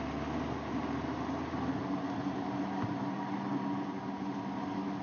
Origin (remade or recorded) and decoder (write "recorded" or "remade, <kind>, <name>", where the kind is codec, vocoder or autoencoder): recorded